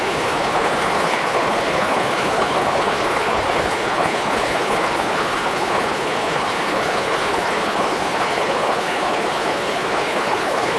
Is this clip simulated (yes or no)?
yes